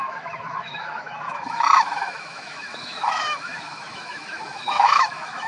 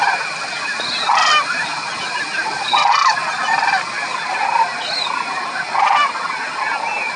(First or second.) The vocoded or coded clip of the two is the first